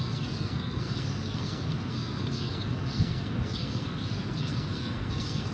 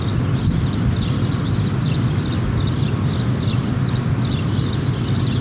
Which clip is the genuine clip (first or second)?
second